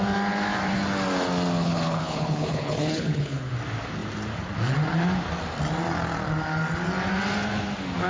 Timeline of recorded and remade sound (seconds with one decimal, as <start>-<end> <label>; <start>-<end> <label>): 0.0-1.6 recorded; 1.6-3.5 remade; 3.5-8.1 recorded